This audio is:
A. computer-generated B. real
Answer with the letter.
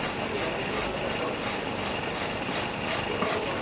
B